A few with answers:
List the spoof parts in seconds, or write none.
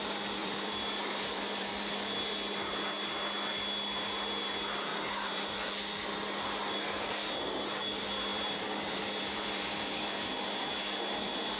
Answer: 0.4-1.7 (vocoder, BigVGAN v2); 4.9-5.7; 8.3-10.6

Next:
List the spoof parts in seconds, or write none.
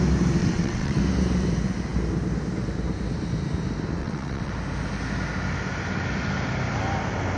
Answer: 0.4-1.0 (vocoder, WaveNeXt); 4.0-4.5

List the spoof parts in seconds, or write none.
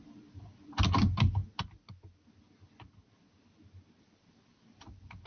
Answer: 0.0-1.4 (vocoder, BigVGAN v2); 4.0-5.3